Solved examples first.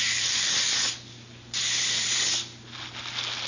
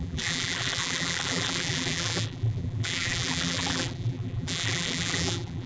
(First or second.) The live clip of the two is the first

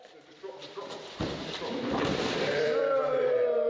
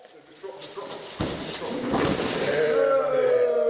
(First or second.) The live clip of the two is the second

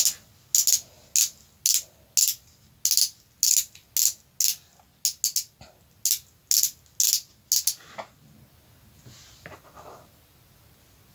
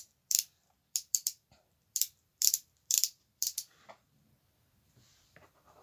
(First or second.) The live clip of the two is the first